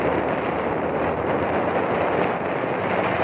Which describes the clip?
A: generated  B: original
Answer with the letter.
B